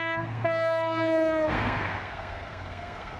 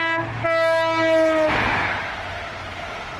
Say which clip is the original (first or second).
second